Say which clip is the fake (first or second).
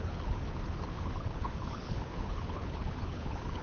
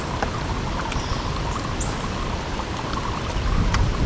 first